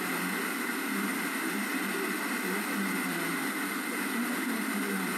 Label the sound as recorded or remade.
recorded